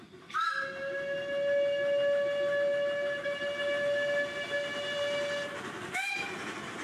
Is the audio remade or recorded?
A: recorded